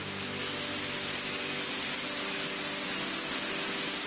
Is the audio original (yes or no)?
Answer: yes